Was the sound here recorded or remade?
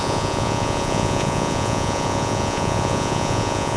remade